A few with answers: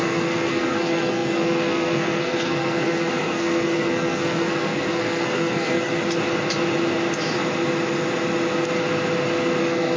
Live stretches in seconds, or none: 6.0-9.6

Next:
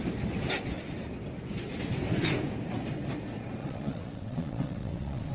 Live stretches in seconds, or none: 0.0-3.6

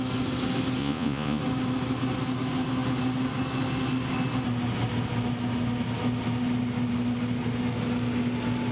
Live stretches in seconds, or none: 0.0-0.8; 1.4-8.7

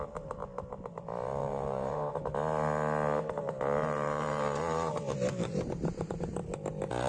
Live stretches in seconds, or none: 0.0-1.4; 2.1-3.8; 5.7-7.1

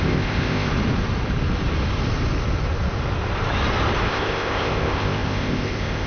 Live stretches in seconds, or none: 0.7-4.1